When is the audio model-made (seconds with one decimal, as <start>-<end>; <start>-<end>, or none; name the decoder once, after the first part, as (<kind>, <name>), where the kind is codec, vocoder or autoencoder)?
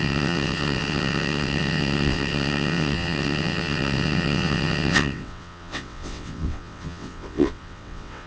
0.0-8.3 (vocoder, WaveNeXt)